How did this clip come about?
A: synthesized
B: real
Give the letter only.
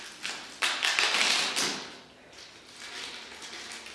B